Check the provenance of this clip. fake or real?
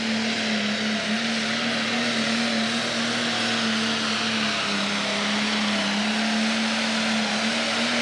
real